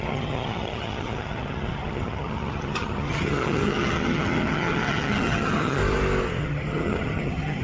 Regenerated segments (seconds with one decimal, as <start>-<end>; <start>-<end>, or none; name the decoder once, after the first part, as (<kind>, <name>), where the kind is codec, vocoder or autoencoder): 0.0-5.8 (vocoder, HiFi-GAN); 6.4-7.6